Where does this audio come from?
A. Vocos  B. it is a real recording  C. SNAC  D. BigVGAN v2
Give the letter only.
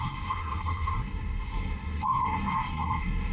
C